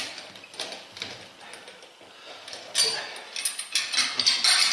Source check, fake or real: real